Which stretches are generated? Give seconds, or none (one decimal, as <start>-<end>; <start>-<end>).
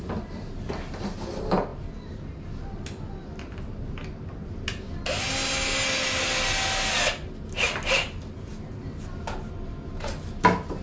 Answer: none